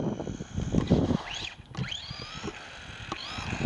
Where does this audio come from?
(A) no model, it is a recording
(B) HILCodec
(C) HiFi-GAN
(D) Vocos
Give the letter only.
A